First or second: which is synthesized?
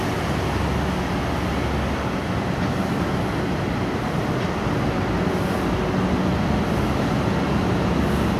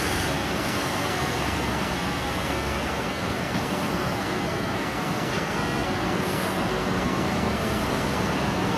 second